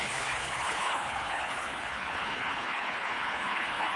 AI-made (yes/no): yes